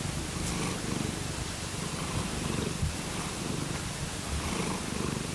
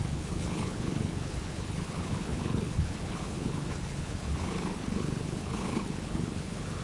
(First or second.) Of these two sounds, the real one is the first